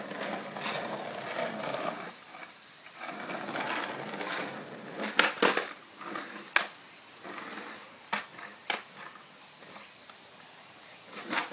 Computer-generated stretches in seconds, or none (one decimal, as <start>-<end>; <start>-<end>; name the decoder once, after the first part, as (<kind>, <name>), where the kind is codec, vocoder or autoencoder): none